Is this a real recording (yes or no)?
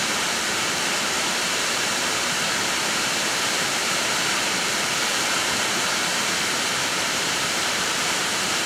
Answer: no